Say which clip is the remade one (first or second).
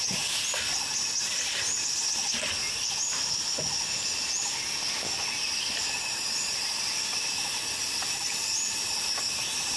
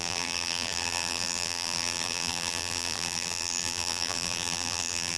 second